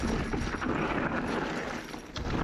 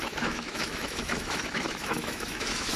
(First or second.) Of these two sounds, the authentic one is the first